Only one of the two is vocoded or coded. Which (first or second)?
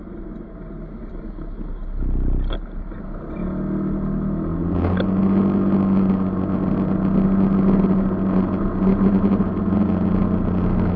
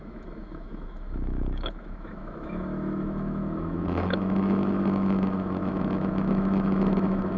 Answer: second